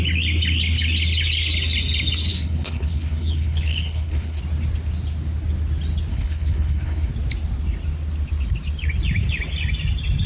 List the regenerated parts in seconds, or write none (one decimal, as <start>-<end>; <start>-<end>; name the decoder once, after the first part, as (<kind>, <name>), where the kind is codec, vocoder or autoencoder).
2.3-4.4 (codec, HILCodec); 6.1-7.1